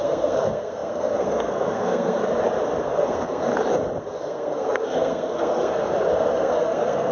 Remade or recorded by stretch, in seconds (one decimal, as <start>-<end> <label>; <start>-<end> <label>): 0.0-2.2 remade; 2.2-2.8 recorded; 2.8-3.5 remade; 3.5-4.0 recorded; 4.0-7.1 remade